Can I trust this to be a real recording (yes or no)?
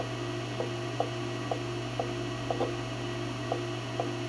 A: yes